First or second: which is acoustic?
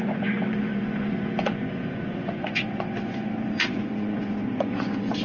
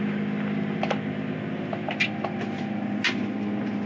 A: second